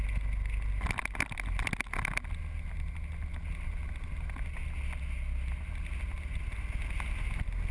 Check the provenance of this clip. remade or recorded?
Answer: recorded